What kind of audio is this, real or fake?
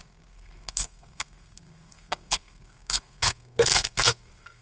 fake